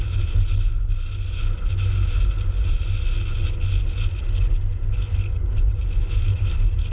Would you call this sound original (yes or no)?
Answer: yes